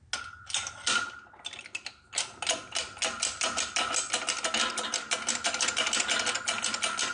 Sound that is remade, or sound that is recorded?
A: recorded